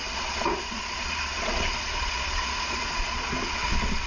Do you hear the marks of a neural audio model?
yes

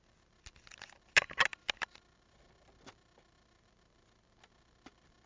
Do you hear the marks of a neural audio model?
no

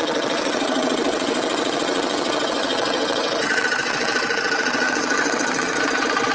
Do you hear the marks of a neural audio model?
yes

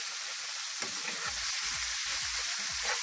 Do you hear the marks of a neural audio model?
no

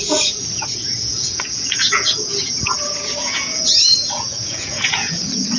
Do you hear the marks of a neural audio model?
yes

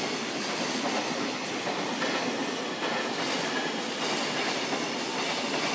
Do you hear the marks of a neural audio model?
no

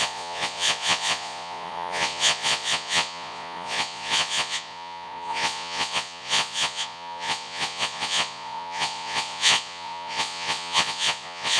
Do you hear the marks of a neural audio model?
yes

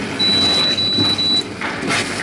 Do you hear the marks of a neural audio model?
no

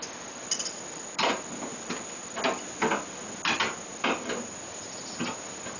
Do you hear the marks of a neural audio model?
no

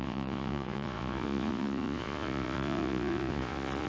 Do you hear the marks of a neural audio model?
yes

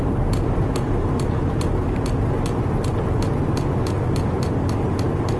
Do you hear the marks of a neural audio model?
no